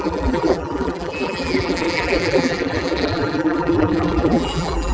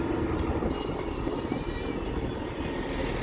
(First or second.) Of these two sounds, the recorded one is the second